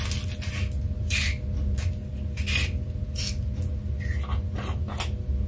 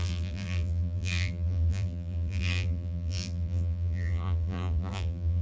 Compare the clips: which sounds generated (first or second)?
second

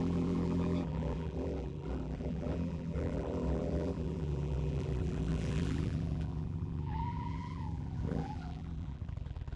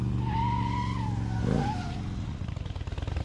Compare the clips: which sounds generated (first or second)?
first